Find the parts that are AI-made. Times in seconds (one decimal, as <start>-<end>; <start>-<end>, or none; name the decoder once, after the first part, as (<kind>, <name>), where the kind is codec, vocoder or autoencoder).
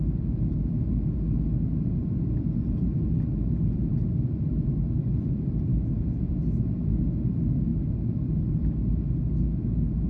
none